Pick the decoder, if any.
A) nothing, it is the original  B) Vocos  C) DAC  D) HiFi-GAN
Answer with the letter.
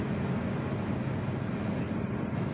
A